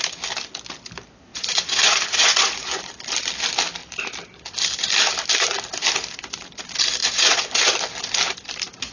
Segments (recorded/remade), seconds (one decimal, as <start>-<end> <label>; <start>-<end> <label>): 0.0-1.3 recorded; 1.3-2.9 remade; 2.9-7.0 recorded; 7.0-7.6 remade; 7.6-8.9 recorded